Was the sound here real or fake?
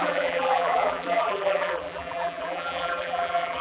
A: fake